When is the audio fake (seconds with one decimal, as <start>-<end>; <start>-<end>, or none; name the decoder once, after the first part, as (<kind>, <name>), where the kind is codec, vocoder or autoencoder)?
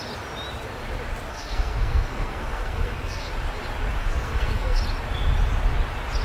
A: 1.3-3.3 (codec, SNAC); 4.0-4.8